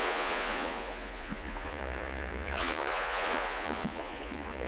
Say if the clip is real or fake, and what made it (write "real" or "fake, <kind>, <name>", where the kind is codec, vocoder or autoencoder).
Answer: fake, vocoder, Vocos